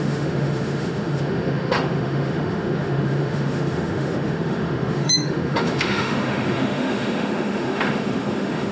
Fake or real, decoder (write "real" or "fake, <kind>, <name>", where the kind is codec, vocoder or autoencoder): fake, autoencoder, DAC-VAE